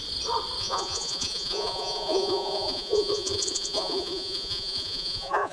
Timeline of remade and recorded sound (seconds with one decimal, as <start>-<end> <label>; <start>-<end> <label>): 0.0-0.6 recorded; 0.6-5.5 remade